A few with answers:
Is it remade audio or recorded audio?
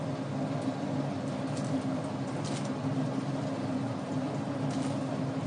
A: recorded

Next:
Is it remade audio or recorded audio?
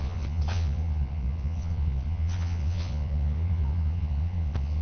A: remade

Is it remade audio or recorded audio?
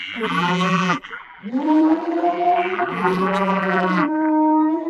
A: remade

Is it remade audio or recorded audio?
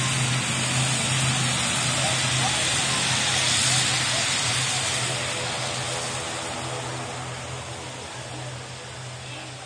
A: recorded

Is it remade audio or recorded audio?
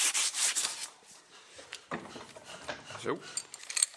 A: remade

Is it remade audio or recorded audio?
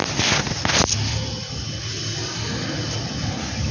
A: recorded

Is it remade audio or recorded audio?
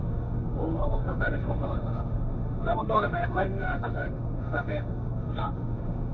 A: remade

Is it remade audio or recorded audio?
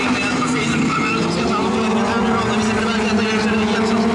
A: recorded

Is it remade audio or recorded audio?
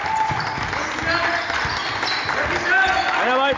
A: recorded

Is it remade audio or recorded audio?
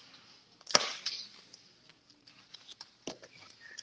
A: recorded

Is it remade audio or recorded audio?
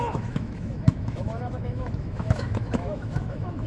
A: remade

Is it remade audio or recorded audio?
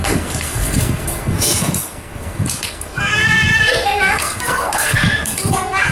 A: remade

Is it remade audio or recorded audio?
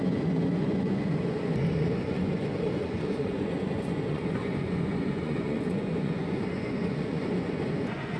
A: remade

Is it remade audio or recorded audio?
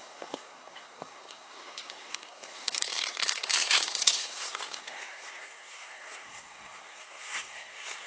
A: remade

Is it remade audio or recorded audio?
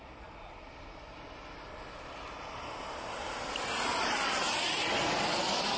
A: recorded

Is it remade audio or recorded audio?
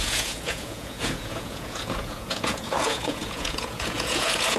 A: remade